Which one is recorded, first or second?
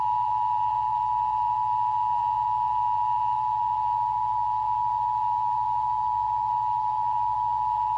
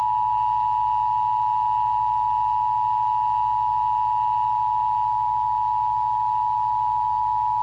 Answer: second